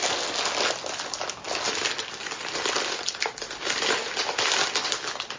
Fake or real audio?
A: real